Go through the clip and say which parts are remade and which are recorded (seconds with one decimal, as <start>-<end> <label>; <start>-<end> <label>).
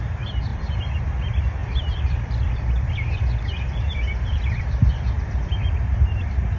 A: 0.0-0.5 recorded; 0.5-1.0 remade; 1.0-1.6 recorded; 1.6-5.6 remade; 5.6-6.6 recorded